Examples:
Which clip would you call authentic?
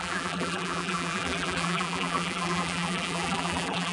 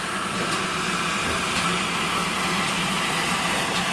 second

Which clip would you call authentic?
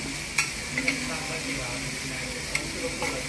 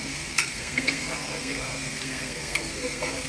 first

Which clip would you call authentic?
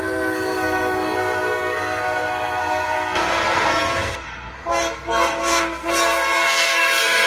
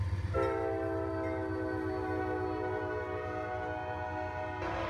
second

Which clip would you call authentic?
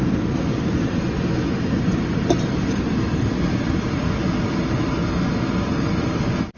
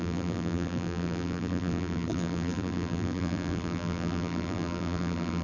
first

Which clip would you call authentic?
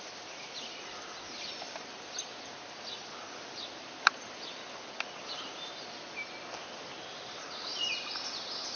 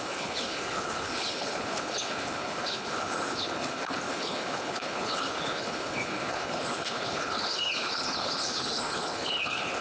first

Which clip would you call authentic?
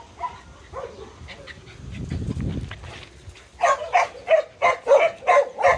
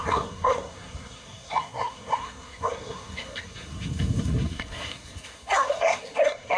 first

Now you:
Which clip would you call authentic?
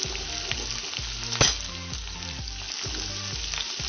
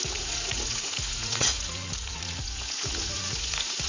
first